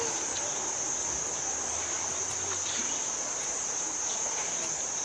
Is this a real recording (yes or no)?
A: yes